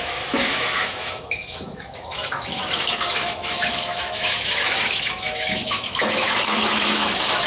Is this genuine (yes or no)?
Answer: no